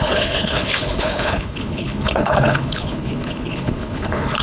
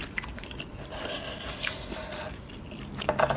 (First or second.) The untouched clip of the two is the second